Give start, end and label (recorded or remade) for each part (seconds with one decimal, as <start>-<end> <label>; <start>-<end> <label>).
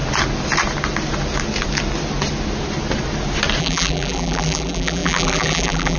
0.0-3.6 recorded; 3.6-6.0 remade